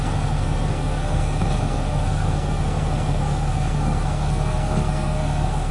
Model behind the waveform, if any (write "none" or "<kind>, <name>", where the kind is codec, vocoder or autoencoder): codec, SNAC